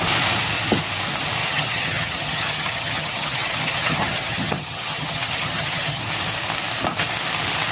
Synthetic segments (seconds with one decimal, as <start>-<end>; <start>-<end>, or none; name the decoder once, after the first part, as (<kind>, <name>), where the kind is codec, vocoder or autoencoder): 1.4-6.0 (vocoder, HiFi-GAN)